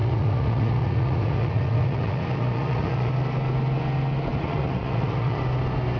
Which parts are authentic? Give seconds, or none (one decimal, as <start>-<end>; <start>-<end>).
3.1-4.3; 5.4-6.0